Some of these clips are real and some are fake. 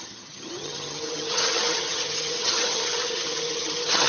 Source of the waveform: fake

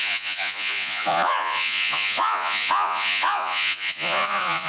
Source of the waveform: fake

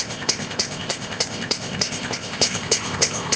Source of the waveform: fake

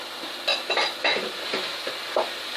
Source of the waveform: real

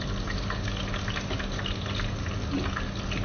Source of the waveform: real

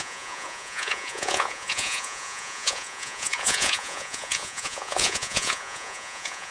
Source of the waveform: fake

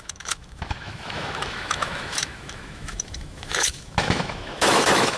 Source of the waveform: fake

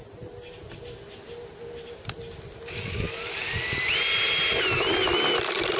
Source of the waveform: real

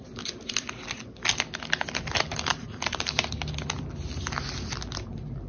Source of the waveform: real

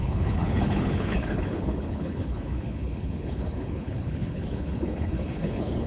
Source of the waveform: fake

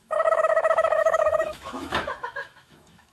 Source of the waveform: fake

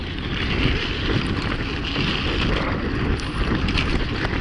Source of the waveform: real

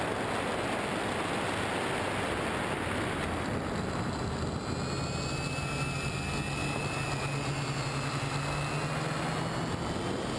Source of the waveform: real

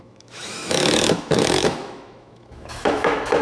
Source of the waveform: fake